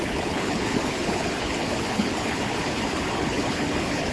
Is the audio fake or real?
fake